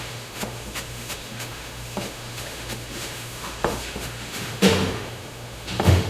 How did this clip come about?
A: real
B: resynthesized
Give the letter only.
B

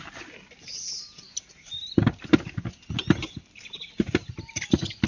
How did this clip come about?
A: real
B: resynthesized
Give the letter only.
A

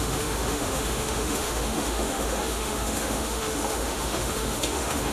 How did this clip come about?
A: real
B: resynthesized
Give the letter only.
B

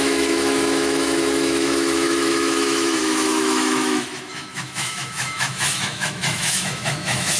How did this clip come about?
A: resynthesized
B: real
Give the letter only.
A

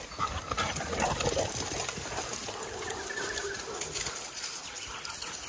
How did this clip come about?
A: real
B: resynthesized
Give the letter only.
A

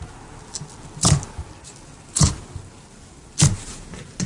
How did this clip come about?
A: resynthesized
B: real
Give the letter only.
B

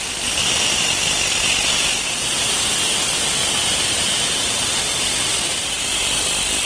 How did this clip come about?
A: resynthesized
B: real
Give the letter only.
B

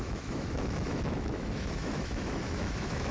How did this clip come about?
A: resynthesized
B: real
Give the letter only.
A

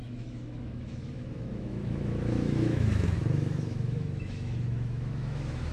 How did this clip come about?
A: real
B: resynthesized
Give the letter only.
B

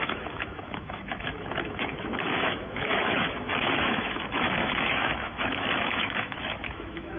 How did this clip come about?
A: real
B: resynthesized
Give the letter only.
B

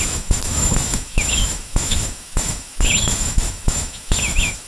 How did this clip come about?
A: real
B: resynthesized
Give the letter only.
B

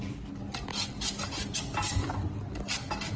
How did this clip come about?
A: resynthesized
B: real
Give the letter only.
B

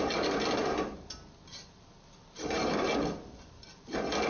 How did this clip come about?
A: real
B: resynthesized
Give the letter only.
A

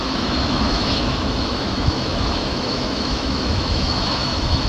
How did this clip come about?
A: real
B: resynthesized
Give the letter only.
B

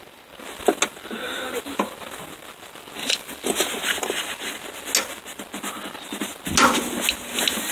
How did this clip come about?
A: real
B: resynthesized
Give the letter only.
A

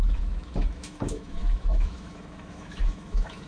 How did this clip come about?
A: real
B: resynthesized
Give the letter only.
B